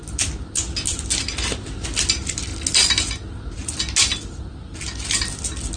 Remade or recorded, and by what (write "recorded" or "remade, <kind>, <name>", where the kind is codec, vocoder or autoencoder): recorded